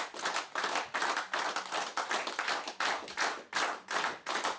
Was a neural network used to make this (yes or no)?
no